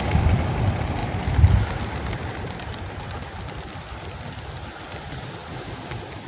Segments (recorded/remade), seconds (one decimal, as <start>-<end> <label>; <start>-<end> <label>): 0.0-1.0 remade; 1.0-4.8 recorded; 4.8-6.3 remade